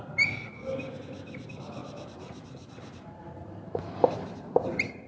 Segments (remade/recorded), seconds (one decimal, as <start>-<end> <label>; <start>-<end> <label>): 0.0-1.8 recorded; 1.8-5.1 remade